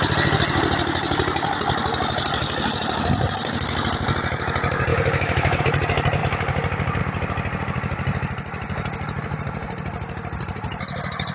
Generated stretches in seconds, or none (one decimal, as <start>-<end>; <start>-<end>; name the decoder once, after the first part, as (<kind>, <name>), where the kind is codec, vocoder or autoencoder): 4.9-5.6 (autoencoder, DAC-VAE)